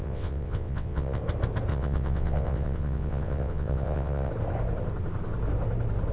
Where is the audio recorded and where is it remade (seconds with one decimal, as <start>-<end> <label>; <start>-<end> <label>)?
0.0-1.2 remade; 1.2-1.7 recorded; 1.7-4.3 remade; 4.3-6.1 recorded